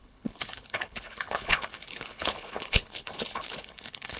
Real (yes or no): no